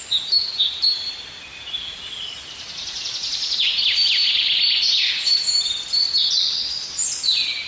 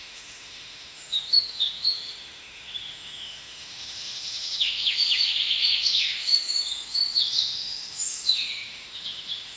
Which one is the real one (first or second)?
first